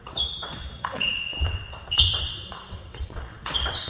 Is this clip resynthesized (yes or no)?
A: yes